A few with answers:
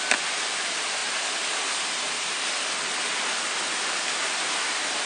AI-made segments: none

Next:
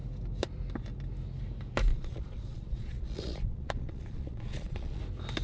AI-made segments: 1.9-5.0 (vocoder, Vocos)